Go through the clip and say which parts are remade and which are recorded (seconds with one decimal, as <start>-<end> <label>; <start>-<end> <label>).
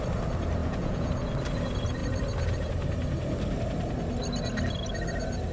0.0-0.6 recorded; 0.6-1.1 remade; 1.1-5.5 recorded